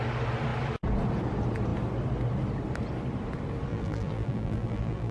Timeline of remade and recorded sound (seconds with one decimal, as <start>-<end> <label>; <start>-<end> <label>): 0.0-3.7 recorded; 3.7-5.1 remade